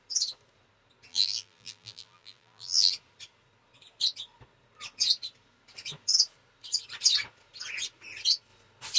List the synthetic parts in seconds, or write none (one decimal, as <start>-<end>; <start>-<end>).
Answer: 1.1-2.9